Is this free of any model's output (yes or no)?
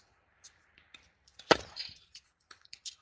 no